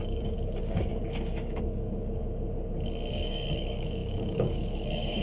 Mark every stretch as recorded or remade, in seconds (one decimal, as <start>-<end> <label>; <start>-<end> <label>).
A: 0.0-2.2 remade; 2.2-3.1 recorded; 3.1-5.2 remade